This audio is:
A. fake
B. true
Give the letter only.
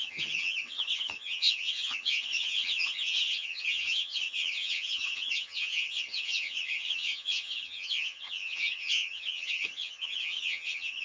A